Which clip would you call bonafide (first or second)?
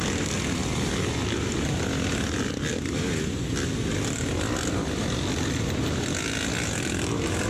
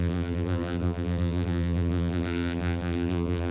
first